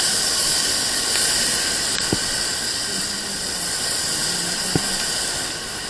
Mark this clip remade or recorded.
recorded